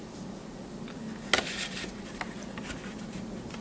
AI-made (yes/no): no